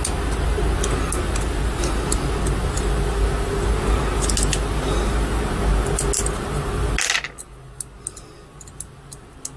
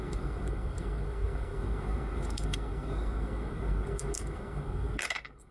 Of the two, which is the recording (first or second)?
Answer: first